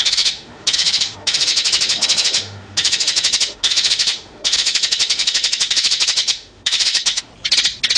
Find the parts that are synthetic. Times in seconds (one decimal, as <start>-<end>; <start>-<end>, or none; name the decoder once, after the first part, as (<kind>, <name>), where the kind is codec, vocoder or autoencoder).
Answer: 0.0-7.3 (autoencoder, DAC-VAE)